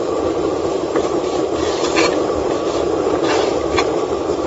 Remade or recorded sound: recorded